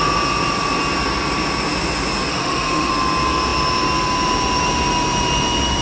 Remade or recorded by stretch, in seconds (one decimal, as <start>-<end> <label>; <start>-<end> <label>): 0.0-2.3 recorded; 2.3-2.9 remade; 2.9-5.8 recorded